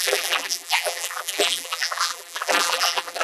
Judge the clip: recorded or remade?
remade